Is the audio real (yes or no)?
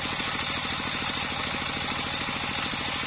yes